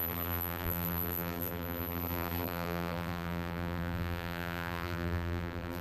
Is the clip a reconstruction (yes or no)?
yes